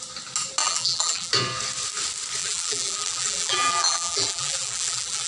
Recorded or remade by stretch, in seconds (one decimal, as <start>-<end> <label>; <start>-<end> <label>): 0.0-0.6 recorded; 0.6-1.3 remade; 1.3-2.4 recorded; 2.4-5.3 remade